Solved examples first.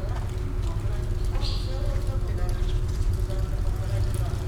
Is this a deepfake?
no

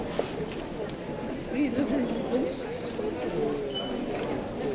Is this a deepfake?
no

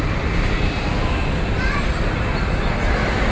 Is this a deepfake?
no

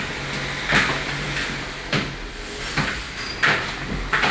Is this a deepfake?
no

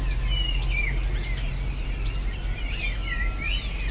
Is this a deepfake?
no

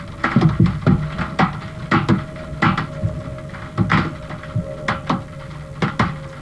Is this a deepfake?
no